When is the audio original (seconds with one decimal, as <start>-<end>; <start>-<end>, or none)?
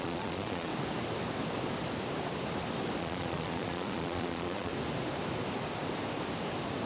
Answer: 0.7-3.0; 4.7-6.9